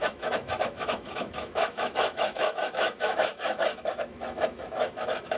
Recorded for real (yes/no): no